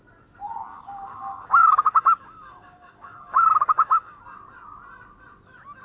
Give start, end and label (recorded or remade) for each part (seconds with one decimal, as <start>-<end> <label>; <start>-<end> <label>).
0.0-0.7 recorded; 0.7-4.2 remade; 4.2-5.8 recorded